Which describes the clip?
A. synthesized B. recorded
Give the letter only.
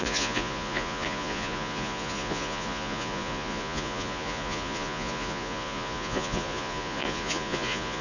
A